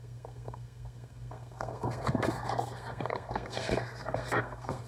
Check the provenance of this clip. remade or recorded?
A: remade